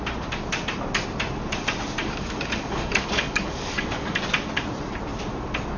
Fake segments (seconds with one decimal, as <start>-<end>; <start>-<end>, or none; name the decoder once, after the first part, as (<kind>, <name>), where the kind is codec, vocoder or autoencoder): 2.0-4.2 (codec, DAC)